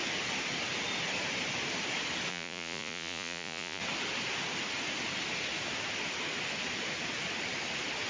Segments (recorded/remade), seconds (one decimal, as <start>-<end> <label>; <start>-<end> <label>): 0.0-2.3 recorded; 2.3-3.8 remade; 3.8-8.1 recorded